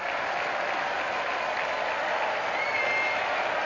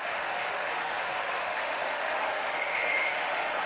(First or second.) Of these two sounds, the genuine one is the first